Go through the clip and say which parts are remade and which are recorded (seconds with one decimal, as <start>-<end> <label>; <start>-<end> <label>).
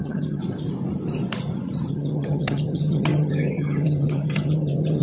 0.0-0.4 remade; 0.4-1.9 recorded; 1.9-5.0 remade